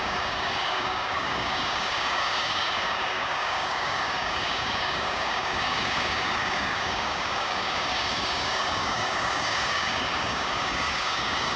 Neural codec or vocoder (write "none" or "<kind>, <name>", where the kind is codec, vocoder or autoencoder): codec, DAC